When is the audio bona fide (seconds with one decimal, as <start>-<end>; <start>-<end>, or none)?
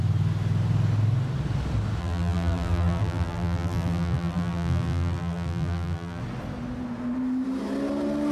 0.0-2.0; 6.2-8.3